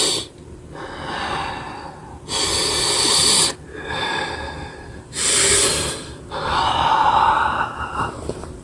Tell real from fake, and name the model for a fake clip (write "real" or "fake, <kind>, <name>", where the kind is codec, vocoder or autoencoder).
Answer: real